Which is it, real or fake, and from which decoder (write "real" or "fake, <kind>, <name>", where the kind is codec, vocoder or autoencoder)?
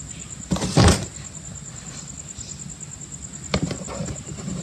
real